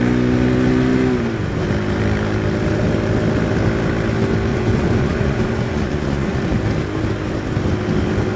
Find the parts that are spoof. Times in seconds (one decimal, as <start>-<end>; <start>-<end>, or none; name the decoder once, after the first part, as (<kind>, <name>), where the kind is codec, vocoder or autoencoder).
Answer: 4.5-6.4 (vocoder, Vocos)